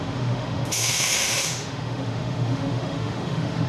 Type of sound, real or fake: fake